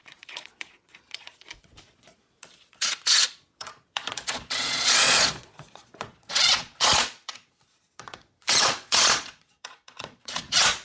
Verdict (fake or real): fake